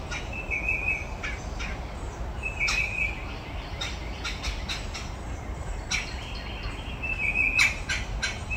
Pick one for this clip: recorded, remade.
recorded